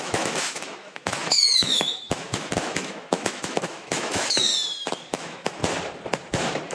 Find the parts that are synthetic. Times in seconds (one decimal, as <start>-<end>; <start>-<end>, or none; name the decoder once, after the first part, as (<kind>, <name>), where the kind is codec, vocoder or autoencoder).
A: 0.0-4.5 (autoencoder, DAC-VAE); 5.1-5.6